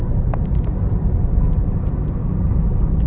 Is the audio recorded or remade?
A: recorded